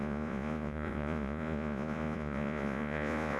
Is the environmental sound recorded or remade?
remade